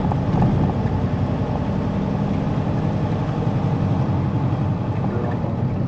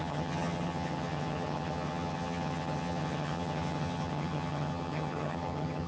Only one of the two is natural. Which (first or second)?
first